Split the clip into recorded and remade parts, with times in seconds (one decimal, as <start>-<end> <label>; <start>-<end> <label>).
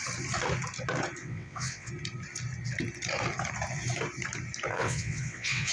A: 0.0-1.2 recorded; 1.2-1.9 remade; 1.9-4.7 recorded; 4.7-5.7 remade